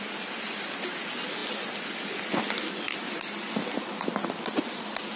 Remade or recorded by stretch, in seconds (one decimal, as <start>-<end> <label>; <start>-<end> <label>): 0.0-5.2 recorded